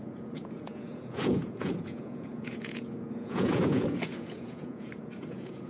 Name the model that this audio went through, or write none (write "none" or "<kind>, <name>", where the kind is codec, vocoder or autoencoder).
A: vocoder, Vocos